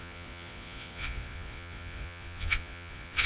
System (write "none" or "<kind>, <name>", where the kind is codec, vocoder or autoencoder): vocoder, Vocos